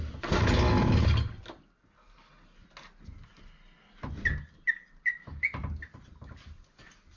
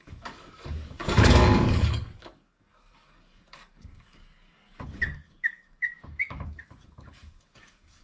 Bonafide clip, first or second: first